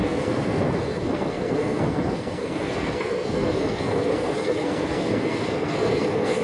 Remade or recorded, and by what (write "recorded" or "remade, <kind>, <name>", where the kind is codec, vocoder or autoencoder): remade, codec, SNAC